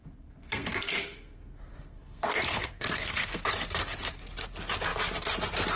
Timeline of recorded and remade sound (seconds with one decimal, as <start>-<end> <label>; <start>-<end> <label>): 0.0-3.5 remade; 3.5-5.8 recorded

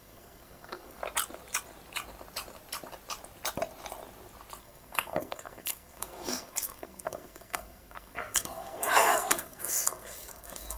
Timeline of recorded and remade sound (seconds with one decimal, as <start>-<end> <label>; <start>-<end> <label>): 0.0-1.0 remade; 1.0-4.6 recorded; 4.6-10.8 remade

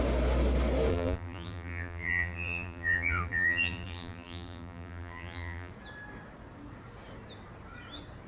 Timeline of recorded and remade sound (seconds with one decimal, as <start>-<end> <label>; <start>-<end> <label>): 0.0-0.9 recorded; 0.9-5.7 remade; 5.7-8.3 recorded

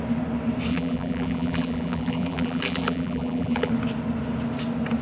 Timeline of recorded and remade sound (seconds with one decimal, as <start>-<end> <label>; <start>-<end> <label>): 0.0-0.7 recorded; 0.7-3.7 remade; 3.7-5.0 recorded

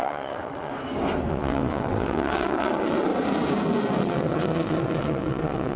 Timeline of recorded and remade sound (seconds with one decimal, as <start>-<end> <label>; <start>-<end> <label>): 0.0-0.7 remade; 0.7-1.3 recorded; 1.3-3.1 remade; 3.1-4.0 recorded; 4.0-5.8 remade

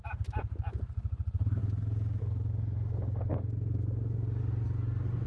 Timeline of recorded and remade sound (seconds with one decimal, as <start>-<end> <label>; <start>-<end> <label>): 0.0-5.3 recorded